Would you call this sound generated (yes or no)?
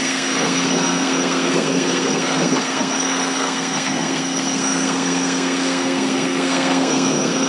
yes